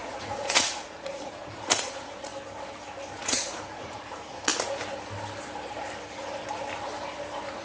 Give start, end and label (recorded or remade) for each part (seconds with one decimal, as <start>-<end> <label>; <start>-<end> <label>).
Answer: 0.0-2.3 remade; 2.3-3.1 recorded; 3.1-4.5 remade; 4.5-7.6 recorded